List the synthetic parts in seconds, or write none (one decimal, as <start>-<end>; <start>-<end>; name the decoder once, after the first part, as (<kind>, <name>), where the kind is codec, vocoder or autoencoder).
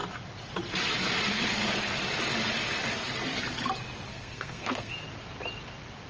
4.1-4.9 (codec, SNAC)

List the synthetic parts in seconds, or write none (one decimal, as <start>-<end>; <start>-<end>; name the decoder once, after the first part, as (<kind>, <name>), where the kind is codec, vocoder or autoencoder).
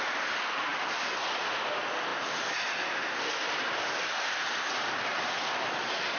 none